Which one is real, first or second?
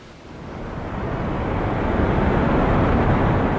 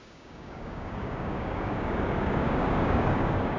first